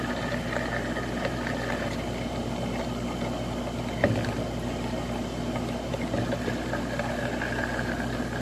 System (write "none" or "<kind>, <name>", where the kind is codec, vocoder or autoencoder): none